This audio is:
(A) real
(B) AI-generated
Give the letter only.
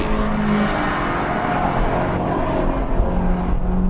A